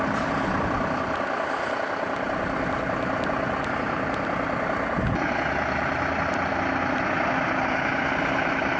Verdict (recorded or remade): recorded